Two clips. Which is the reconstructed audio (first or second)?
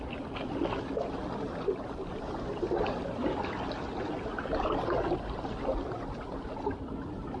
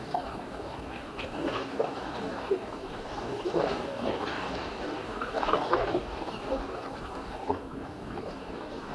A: second